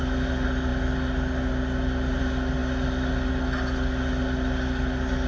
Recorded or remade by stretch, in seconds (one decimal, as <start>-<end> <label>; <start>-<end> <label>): 0.0-5.3 recorded